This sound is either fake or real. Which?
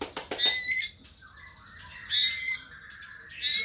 real